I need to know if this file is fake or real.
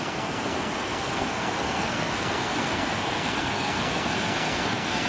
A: fake